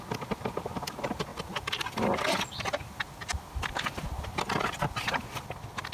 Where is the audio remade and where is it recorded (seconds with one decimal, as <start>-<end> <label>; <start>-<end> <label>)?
0.0-5.9 recorded